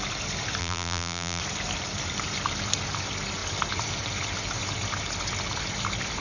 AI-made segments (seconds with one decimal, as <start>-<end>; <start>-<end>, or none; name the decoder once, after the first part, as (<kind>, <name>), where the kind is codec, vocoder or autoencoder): 0.6-1.4 (vocoder, BigVGAN v2)

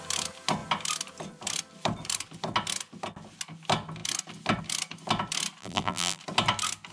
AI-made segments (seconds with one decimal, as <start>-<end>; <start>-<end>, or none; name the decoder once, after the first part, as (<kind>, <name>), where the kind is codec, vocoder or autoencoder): 5.6-6.2 (vocoder, BigVGAN v2)

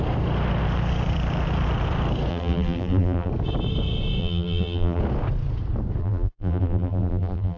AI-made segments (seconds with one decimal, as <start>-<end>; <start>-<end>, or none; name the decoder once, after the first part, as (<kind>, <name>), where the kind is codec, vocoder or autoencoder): 2.3-3.3 (vocoder, BigVGAN v2); 4.2-5.0; 6.0-7.6

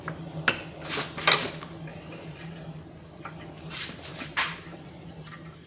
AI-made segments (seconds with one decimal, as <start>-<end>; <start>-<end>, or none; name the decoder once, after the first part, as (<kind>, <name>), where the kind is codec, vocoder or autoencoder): 1.9-5.3 (vocoder, BigVGAN v2)

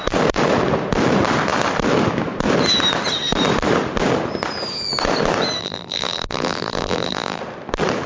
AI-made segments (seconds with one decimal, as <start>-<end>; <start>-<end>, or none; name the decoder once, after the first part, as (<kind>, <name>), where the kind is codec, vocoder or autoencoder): 5.6-7.4 (vocoder, BigVGAN v2)

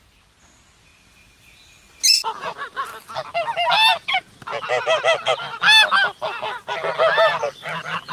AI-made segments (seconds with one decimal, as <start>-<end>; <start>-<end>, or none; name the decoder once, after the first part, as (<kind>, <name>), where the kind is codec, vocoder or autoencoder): none

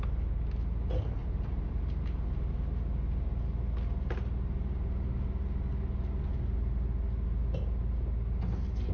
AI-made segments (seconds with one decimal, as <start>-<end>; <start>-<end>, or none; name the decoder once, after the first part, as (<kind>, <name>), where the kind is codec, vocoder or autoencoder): 1.2-1.8 (vocoder, BigVGAN v2)